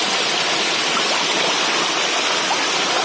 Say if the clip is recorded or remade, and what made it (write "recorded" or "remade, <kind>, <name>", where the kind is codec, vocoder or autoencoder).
recorded